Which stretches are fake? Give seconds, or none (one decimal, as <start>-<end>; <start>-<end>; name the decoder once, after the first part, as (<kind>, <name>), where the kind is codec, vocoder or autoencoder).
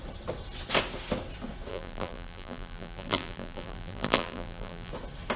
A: 1.7-4.9 (vocoder, BigVGAN v2)